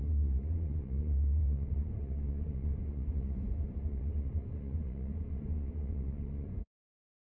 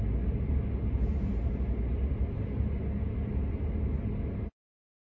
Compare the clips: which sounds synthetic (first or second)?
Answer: first